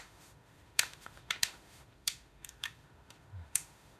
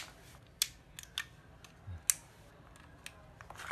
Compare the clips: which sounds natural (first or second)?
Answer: second